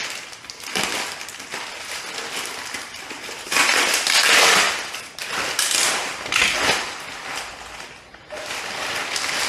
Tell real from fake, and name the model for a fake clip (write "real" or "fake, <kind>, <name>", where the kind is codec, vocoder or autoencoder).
real